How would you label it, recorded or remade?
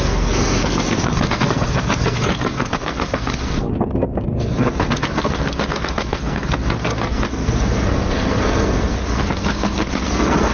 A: remade